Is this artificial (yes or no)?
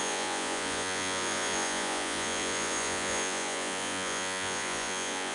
yes